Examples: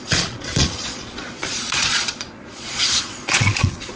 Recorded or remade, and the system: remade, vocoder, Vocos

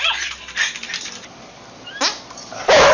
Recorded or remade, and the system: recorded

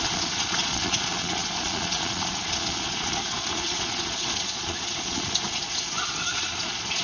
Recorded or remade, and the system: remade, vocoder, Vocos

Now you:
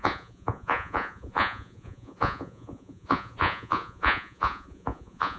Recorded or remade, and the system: remade, vocoder, Vocos